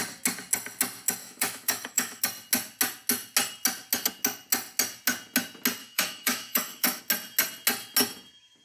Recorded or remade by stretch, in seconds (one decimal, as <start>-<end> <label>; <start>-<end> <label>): 0.0-1.2 recorded; 1.2-2.2 remade; 2.2-5.8 recorded; 5.8-7.0 remade; 7.0-8.6 recorded